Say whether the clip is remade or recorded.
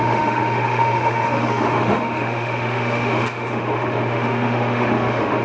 remade